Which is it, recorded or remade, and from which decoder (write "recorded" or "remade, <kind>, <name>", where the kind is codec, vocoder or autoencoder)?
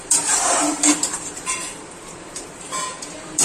remade, vocoder, BigVGAN v2